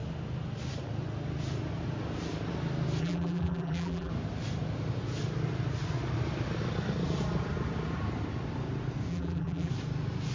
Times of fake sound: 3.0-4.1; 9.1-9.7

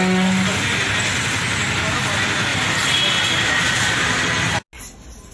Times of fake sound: 2.5-3.8

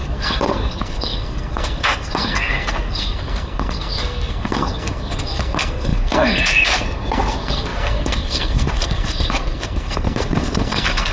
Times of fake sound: 0.0-11.1

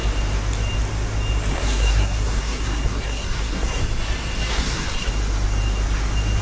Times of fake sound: 1.5-3.8; 4.5-5.1

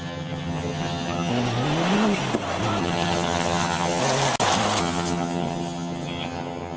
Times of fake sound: 0.0-1.3; 2.8-4.0; 4.8-6.8

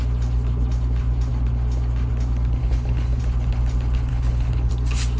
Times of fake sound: 2.6-3.2; 4.1-4.7

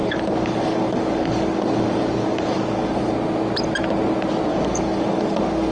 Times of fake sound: 0.0-3.1; 4.5-5.7